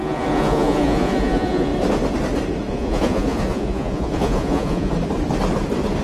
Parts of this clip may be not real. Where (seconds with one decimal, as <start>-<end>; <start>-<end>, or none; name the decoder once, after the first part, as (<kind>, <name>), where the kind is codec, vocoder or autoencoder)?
0.0-1.7 (vocoder, Vocos); 2.7-4.9